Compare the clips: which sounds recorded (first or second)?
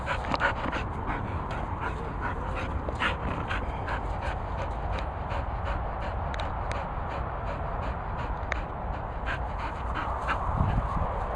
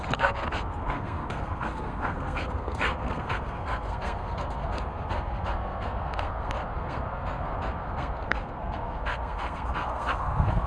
first